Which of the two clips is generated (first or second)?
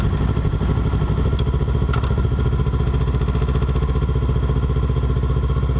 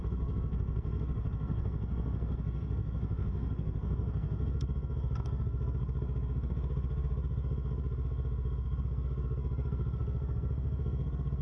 second